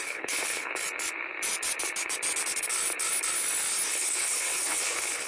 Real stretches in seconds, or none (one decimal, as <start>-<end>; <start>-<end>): 0.7-3.9